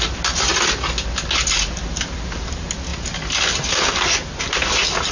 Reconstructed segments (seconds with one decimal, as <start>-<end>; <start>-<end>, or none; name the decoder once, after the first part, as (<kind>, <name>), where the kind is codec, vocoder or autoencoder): none